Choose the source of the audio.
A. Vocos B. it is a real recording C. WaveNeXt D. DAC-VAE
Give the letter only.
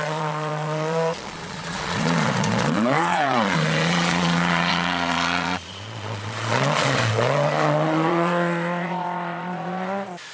A